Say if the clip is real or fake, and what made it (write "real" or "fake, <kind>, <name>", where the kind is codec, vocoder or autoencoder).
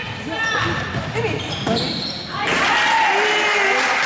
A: real